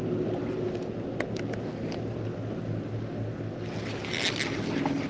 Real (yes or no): yes